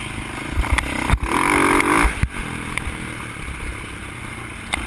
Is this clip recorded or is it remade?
recorded